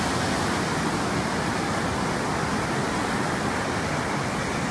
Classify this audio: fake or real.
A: real